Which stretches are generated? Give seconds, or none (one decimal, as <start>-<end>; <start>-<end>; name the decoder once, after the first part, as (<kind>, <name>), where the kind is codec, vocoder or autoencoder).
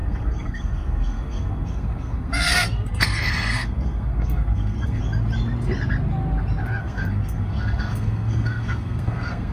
0.0-5.0 (codec, SNAC); 6.8-9.5